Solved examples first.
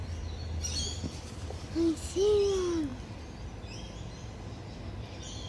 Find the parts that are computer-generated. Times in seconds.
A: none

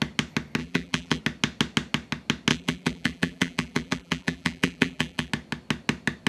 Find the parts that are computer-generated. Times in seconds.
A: 0.6-1.2 (vocoder, BigVGAN v2); 2.5-5.3

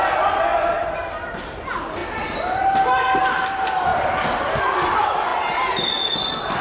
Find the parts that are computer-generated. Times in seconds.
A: 0.5-1.1 (vocoder, BigVGAN v2)

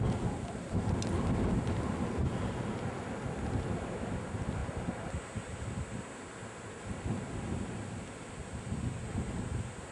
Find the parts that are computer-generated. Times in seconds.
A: none

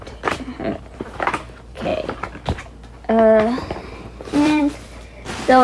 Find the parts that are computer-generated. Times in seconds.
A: 0.0-1.9 (vocoder, BigVGAN v2); 4.2-5.6

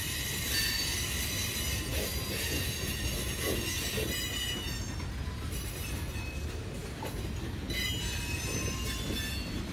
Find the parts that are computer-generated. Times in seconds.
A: none

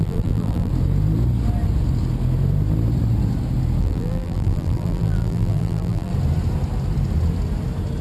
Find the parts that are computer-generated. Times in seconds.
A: 0.0-0.7 (vocoder, BigVGAN v2); 3.8-6.1